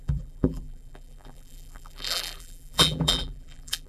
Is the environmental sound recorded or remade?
remade